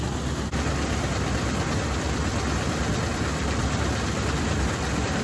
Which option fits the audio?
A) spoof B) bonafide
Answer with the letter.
B